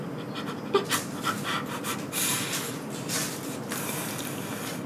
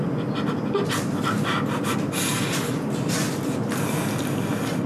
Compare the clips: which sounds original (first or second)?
second